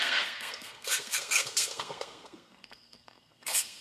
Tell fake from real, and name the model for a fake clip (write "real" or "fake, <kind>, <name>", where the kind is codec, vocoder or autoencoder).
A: fake, codec, SNAC